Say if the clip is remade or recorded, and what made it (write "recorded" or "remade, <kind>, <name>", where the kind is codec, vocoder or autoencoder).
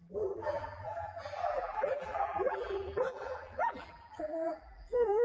remade, vocoder, BigVGAN v2